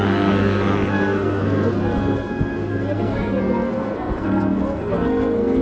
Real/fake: fake